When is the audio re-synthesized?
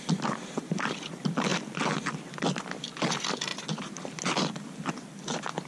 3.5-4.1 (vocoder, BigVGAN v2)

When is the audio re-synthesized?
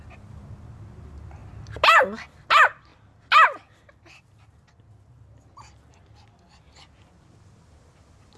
none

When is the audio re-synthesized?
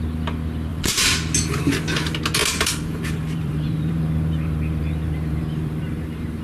0.7-1.2 (vocoder, BigVGAN v2); 2.4-6.4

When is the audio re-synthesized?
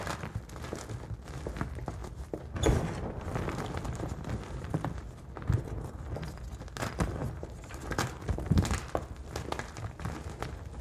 2.0-4.7 (vocoder, BigVGAN v2)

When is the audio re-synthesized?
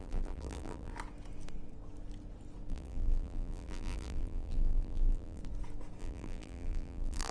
0.0-0.9 (vocoder, BigVGAN v2); 2.7-5.4; 6.0-7.3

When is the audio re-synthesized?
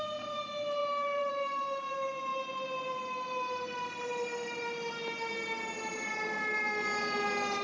0.8-1.3 (vocoder, BigVGAN v2)